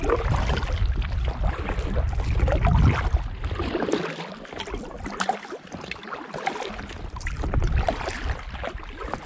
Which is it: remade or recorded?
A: recorded